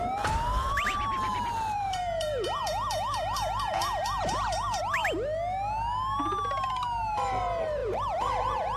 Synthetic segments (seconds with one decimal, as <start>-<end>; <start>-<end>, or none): 0.0-5.0; 7.0-8.8